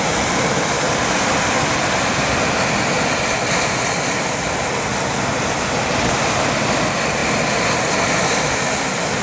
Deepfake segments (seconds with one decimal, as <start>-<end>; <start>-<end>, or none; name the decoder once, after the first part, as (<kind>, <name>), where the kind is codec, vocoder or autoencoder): none